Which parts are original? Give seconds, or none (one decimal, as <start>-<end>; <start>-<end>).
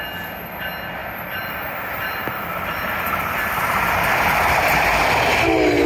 0.0-1.0; 2.3-5.9